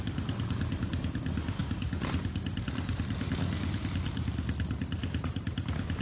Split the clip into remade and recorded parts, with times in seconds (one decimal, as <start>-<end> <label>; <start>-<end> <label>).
0.0-6.0 recorded